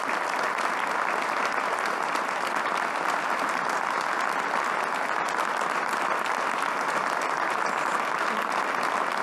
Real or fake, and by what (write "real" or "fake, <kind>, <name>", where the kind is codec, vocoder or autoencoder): real